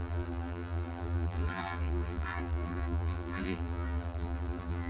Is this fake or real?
fake